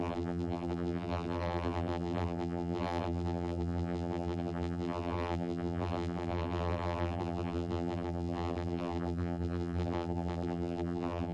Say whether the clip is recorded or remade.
remade